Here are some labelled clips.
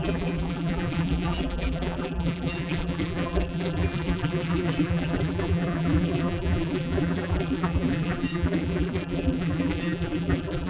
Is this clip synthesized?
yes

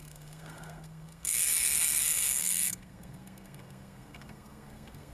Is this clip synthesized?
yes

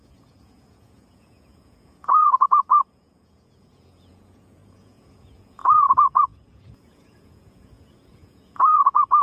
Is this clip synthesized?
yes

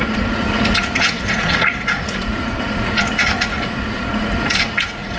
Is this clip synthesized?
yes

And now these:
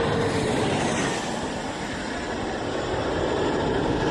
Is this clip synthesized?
no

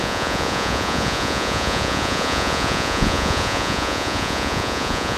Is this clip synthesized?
yes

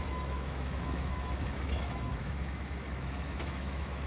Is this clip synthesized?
yes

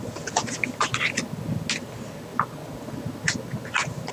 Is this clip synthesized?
no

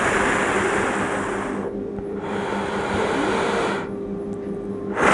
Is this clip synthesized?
no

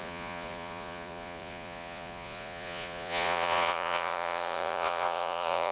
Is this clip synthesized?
yes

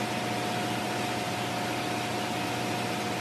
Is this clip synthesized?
no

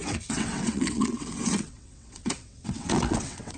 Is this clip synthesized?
yes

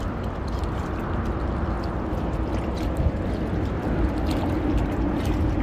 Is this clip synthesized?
no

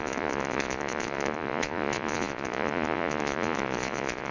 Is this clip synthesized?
yes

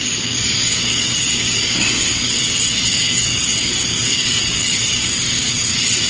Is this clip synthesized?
yes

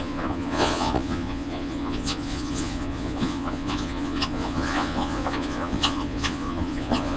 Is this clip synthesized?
yes